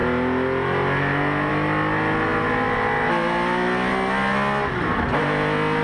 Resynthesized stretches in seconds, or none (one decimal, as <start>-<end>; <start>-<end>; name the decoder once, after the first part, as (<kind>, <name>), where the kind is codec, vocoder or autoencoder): none

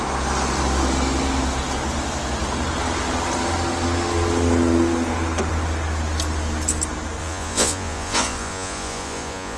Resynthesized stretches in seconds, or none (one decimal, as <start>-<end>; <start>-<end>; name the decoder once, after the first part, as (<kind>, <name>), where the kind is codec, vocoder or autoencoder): 7.2-9.6 (vocoder, Vocos)

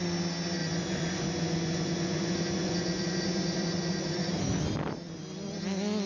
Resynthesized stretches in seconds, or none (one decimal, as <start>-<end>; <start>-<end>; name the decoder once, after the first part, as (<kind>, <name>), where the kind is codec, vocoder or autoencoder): 0.6-4.3 (vocoder, Vocos)

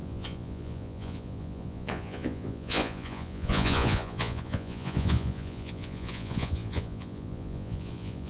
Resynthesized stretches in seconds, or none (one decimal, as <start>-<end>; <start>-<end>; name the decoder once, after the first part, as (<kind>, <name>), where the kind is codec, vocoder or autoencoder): 0.0-8.3 (vocoder, Vocos)